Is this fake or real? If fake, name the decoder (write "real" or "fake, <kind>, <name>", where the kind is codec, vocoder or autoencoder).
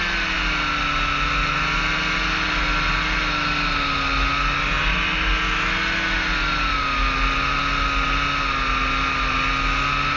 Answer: real